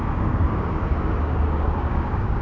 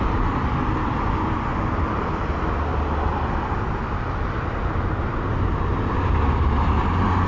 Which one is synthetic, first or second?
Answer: first